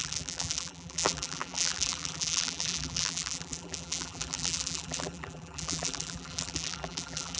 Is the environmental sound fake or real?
fake